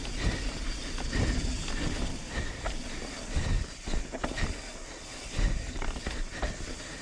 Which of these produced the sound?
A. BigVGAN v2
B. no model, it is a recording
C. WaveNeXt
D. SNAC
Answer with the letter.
B